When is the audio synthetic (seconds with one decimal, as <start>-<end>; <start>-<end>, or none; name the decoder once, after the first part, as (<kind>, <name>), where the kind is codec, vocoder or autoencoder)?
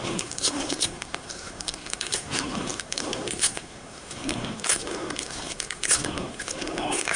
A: 0.0-7.2 (codec, SNAC)